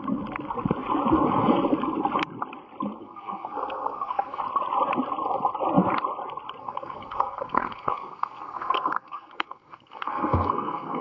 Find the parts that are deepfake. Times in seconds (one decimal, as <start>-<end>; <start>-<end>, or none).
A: 3.0-4.4; 6.6-11.0